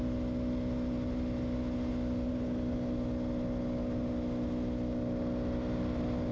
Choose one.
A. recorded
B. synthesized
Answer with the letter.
A